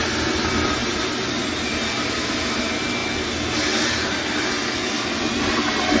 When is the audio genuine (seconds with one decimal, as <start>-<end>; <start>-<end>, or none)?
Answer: 0.0-6.0